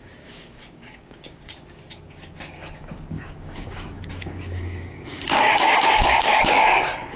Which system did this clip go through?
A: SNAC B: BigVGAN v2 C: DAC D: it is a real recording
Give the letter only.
C